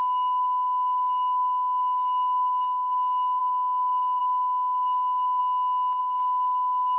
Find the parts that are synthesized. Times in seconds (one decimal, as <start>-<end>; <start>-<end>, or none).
0.0-5.4; 6.0-7.0